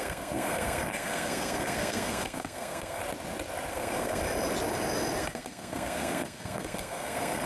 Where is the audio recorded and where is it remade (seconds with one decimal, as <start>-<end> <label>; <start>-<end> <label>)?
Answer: 0.0-3.0 remade; 3.0-3.7 recorded; 3.7-4.2 remade; 4.2-5.2 recorded; 5.2-7.5 remade